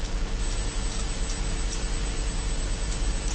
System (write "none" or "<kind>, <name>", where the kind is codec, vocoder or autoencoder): none